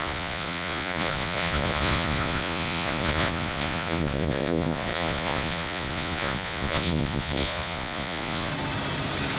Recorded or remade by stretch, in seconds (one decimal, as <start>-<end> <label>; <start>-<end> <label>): 0.0-8.5 remade; 8.5-9.4 recorded

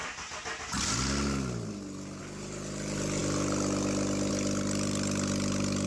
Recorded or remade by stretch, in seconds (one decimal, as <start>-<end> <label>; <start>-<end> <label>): 0.0-5.9 recorded

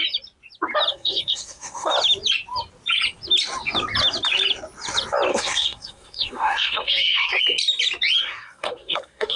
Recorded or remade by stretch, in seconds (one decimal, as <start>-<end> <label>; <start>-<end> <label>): 0.0-0.9 recorded; 0.9-1.9 remade; 1.9-5.3 recorded; 5.3-7.4 remade; 7.4-8.2 recorded; 8.2-9.4 remade

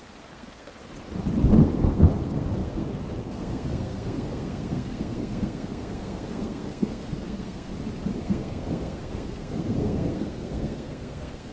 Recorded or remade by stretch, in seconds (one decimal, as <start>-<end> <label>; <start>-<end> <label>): 0.0-0.8 remade; 0.8-1.6 recorded; 1.6-7.7 remade; 7.7-8.2 recorded; 8.2-11.5 remade

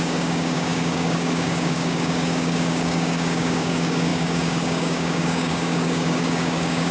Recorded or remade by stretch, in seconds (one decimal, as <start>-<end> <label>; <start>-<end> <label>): 0.0-6.9 remade

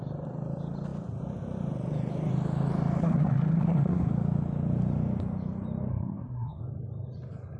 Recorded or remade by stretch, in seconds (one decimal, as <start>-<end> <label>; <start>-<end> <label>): 0.0-3.0 recorded; 3.0-4.1 remade; 4.1-5.9 recorded; 5.9-6.6 remade; 6.6-7.6 recorded

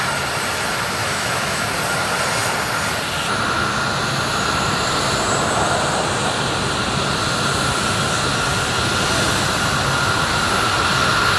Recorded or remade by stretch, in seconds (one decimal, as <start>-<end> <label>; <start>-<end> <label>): 0.0-1.0 recorded; 1.0-1.6 remade; 1.6-11.4 recorded